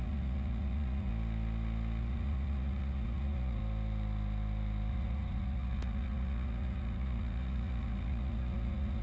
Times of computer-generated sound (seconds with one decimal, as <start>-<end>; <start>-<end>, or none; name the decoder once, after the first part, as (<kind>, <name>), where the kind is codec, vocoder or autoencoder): 0.0-1.1 (vocoder, Vocos); 2.0-3.6; 4.9-9.0